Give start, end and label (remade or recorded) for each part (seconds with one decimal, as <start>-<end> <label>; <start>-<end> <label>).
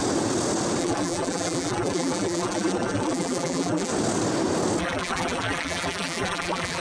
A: 0.0-0.8 recorded; 0.8-3.9 remade; 3.9-4.8 recorded; 4.8-6.8 remade